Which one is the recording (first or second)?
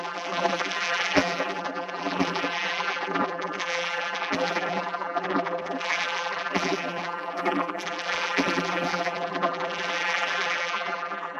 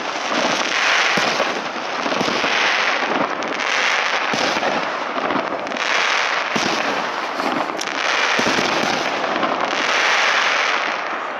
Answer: second